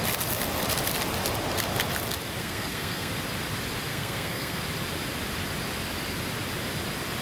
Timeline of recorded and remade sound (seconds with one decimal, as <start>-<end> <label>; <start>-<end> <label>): 0.0-2.4 recorded; 2.4-3.1 remade; 3.1-3.9 recorded; 3.9-4.6 remade; 4.6-7.2 recorded